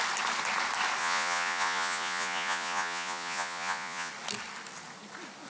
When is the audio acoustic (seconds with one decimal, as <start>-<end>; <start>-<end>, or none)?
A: 0.0-1.0; 4.1-5.5

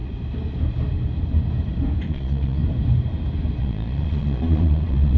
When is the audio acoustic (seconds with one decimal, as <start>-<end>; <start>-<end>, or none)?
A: 0.0-2.1; 2.6-3.6